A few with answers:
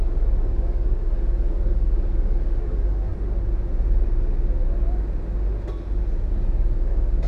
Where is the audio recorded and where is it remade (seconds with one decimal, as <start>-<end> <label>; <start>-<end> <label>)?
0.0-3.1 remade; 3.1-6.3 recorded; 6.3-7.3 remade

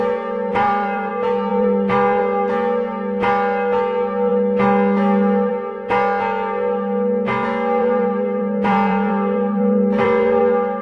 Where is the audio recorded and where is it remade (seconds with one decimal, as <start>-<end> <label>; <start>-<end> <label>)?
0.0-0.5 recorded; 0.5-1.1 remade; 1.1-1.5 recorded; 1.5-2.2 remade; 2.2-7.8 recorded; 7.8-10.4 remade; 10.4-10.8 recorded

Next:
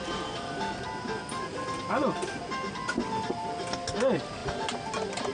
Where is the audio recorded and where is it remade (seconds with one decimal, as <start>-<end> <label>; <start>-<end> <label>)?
0.0-5.3 recorded

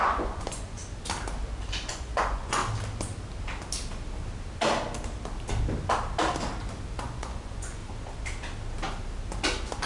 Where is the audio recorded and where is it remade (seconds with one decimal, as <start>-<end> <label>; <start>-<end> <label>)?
0.0-0.8 remade; 0.8-1.9 recorded; 1.9-2.6 remade; 2.6-7.0 recorded; 7.0-7.8 remade; 7.8-9.9 recorded

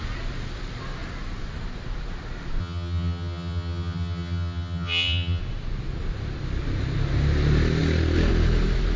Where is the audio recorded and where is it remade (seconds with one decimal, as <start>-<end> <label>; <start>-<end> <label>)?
0.0-2.6 recorded; 2.6-5.4 remade; 5.4-9.0 recorded